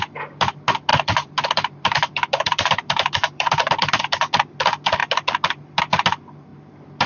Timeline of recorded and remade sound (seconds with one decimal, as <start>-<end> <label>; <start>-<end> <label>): 0.0-0.9 recorded; 0.9-4.0 remade; 4.0-7.1 recorded